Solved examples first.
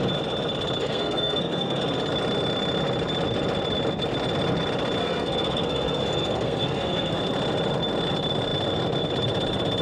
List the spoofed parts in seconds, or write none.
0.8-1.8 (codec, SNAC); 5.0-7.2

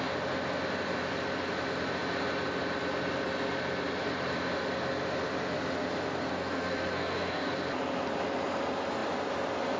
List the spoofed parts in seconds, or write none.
6.3-7.5 (codec, SNAC)